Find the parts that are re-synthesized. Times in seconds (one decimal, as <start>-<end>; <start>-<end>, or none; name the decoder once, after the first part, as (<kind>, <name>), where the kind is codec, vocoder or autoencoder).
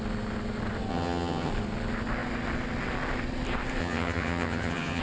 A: 0.9-1.5 (vocoder, HiFi-GAN); 3.8-5.0